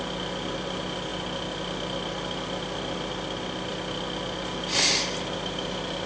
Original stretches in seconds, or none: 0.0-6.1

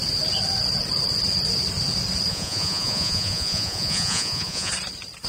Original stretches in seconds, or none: 0.0-2.3; 4.7-5.3

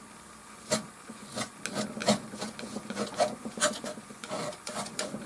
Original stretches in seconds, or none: 0.0-0.4; 1.6-2.0

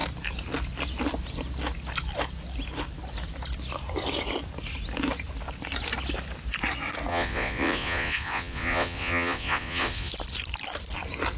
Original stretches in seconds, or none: 0.0-7.1; 10.1-11.4

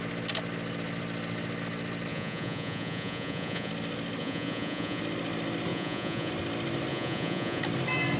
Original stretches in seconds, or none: 0.0-2.1; 3.7-4.2; 5.0-5.7; 6.3-6.9; 7.6-8.2

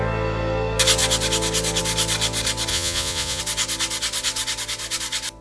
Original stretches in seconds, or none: 0.0-2.7; 3.4-5.4